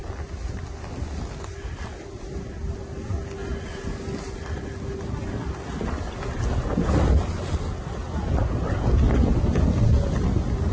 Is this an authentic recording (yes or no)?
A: yes